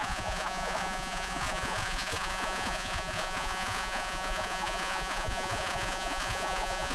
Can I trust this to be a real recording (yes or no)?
no